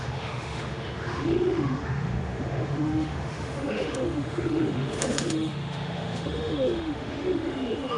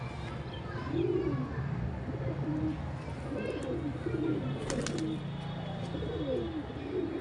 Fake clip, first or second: first